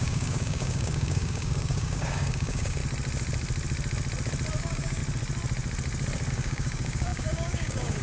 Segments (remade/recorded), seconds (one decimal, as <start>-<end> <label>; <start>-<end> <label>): 0.0-2.8 remade; 2.8-4.6 recorded; 4.6-5.0 remade; 5.0-6.3 recorded; 6.3-8.0 remade